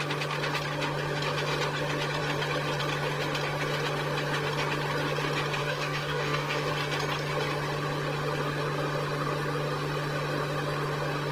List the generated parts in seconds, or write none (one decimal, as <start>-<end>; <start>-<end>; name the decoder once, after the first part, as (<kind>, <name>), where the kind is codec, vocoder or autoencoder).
5.6-6.7 (codec, DAC)